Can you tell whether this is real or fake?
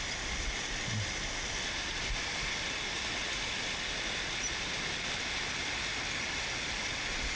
real